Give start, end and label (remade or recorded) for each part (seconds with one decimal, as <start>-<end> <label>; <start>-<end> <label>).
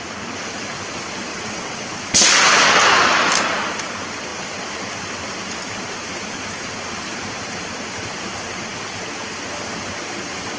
0.0-1.3 recorded; 1.3-1.9 remade; 1.9-10.6 recorded